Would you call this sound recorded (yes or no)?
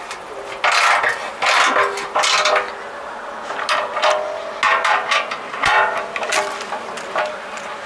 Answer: yes